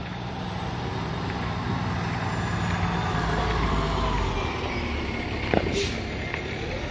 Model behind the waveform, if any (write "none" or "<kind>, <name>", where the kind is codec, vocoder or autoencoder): none